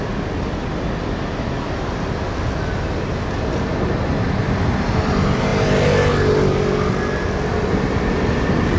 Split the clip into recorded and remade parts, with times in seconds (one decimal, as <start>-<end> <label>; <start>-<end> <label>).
0.0-8.8 recorded